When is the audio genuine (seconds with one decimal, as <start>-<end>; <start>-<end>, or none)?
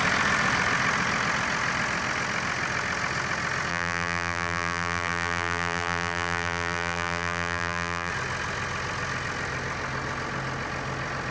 0.0-3.7; 8.1-11.3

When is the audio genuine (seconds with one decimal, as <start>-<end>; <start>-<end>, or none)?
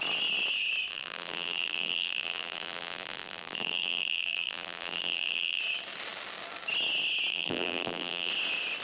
0.0-0.9; 5.6-7.3; 8.3-8.8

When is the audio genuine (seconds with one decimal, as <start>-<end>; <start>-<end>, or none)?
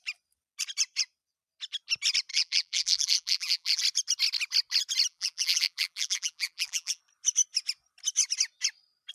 0.0-2.3; 3.8-5.1; 7.0-9.1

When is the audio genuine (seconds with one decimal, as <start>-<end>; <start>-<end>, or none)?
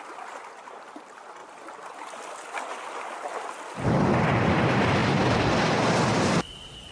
0.0-6.9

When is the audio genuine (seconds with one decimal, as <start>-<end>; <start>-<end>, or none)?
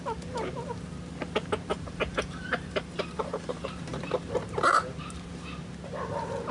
0.0-1.7; 4.1-6.5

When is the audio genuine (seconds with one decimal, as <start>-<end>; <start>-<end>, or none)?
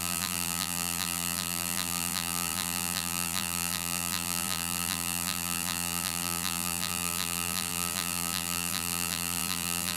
none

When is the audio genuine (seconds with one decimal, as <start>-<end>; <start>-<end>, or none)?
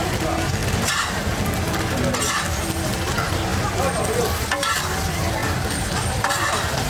0.0-0.6; 1.3-5.4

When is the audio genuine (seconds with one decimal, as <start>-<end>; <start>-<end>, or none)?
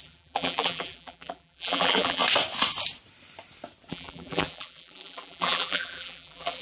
2.2-3.9